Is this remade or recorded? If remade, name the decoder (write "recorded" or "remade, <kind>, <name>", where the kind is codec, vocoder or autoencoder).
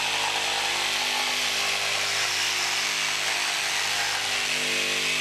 recorded